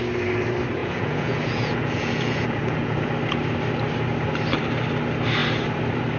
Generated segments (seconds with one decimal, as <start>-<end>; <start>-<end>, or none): 0.8-3.1

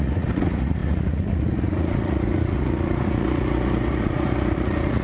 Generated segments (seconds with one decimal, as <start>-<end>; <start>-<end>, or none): 0.0-5.0

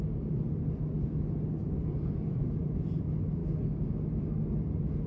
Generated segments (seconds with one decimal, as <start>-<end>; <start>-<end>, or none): 1.6-3.0